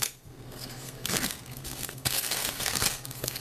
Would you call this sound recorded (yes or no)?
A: no